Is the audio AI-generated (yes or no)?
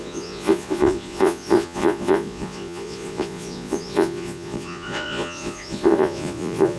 yes